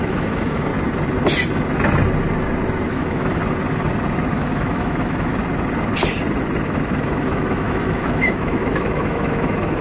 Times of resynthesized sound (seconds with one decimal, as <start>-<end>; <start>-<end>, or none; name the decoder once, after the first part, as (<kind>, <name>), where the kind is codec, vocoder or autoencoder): 0.0-0.7 (autoencoder, DAC-VAE); 2.9-3.4; 4.3-5.3; 7.0-9.8